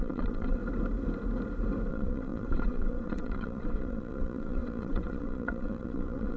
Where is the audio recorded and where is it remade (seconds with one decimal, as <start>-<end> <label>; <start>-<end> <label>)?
0.0-0.6 remade; 0.6-1.9 recorded; 1.9-6.4 remade